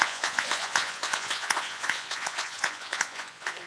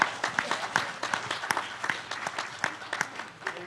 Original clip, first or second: second